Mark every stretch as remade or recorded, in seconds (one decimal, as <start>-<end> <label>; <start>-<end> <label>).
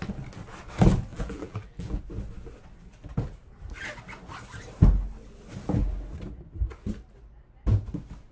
0.0-1.1 recorded; 1.1-2.0 remade; 2.0-8.3 recorded